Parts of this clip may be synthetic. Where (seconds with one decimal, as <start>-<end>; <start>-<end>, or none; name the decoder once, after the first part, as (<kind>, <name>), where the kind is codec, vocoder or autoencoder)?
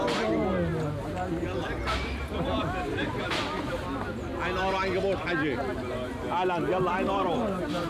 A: none